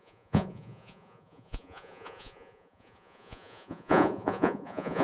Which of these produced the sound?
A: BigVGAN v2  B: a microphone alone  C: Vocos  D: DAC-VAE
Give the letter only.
C